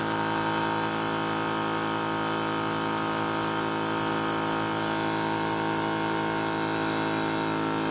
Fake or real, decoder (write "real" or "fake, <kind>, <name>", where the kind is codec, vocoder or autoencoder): real